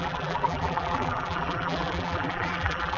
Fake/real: fake